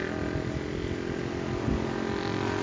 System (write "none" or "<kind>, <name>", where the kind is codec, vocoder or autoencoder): none